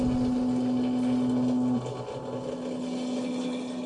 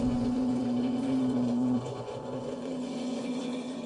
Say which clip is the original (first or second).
first